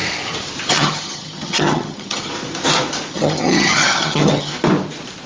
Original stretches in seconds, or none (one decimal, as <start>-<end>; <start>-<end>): 0.0-0.7; 2.3-3.1; 4.5-5.3